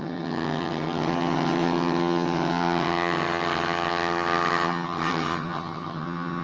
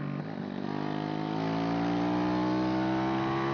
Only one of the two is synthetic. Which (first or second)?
first